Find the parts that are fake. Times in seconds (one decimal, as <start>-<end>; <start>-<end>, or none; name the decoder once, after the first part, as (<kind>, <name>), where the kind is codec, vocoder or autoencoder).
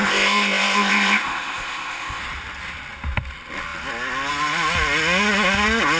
0.0-2.2 (codec, ZipCodec)